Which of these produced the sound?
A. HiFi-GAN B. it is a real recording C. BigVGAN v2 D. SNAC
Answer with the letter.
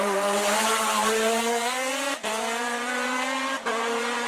C